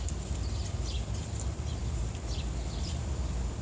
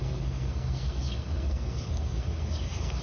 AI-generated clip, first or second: second